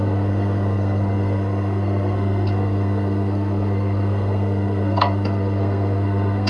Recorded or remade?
remade